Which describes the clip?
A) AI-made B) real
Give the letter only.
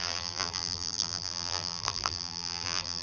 A